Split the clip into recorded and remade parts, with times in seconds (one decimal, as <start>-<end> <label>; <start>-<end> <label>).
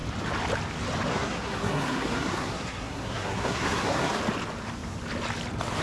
0.0-1.1 recorded; 1.1-4.2 remade; 4.2-5.8 recorded